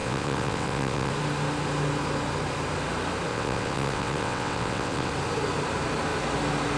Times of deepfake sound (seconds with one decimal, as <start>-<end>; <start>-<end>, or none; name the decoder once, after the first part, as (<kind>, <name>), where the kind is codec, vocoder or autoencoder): 0.0-1.1 (vocoder, WaveNeXt); 3.3-5.1

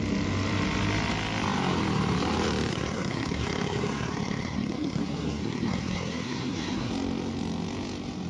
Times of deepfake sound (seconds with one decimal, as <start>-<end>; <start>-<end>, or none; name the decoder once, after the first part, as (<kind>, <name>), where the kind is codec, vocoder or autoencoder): 2.7-6.9 (codec, SNAC)

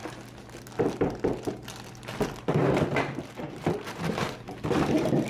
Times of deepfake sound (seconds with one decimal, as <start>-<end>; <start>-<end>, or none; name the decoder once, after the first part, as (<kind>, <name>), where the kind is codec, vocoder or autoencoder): 3.2-5.3 (vocoder, BigVGAN v2)